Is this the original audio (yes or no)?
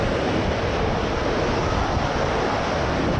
yes